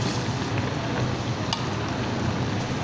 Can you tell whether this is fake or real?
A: real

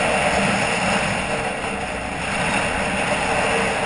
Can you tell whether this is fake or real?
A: real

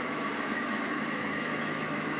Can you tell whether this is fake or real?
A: fake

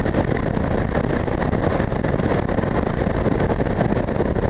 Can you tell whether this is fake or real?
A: real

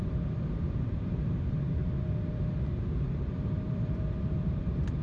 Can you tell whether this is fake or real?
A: fake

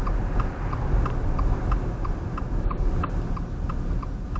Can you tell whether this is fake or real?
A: real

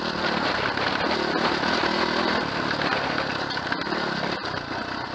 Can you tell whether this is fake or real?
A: real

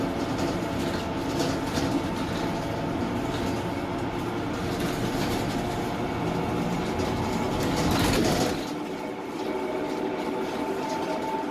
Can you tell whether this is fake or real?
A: real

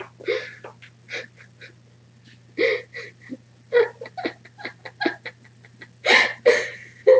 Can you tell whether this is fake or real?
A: real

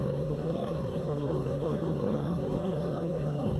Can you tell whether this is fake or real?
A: fake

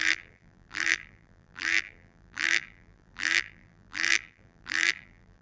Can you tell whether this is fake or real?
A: fake